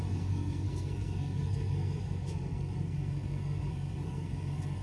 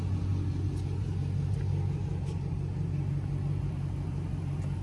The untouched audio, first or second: second